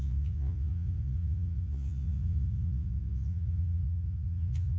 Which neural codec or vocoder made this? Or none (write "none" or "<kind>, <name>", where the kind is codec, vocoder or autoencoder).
vocoder, Vocos